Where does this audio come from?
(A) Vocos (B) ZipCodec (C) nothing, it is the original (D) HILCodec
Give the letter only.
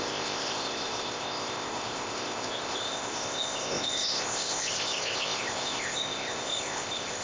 B